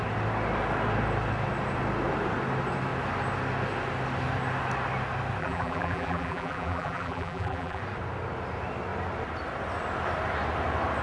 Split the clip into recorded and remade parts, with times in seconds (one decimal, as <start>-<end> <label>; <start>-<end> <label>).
0.0-5.4 recorded; 5.4-7.8 remade; 7.8-11.0 recorded